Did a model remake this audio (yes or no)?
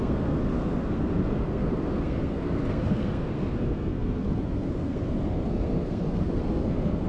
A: yes